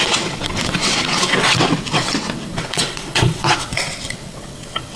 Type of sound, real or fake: fake